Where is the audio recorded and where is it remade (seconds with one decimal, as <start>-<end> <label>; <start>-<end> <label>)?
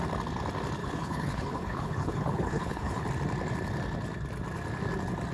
0.0-0.8 recorded; 0.8-3.1 remade; 3.1-5.3 recorded